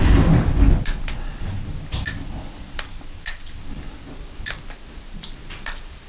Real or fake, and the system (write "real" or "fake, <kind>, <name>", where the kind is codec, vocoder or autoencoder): real